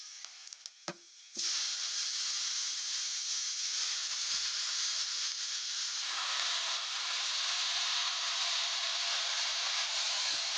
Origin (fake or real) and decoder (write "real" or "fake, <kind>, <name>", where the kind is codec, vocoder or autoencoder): real